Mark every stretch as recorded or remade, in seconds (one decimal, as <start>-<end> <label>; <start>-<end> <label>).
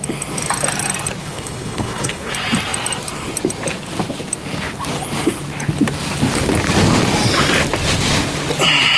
0.0-1.2 recorded; 1.2-2.3 remade; 2.3-9.0 recorded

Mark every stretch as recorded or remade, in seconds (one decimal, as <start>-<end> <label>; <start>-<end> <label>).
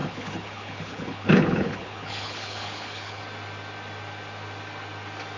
0.0-3.2 remade; 3.2-5.4 recorded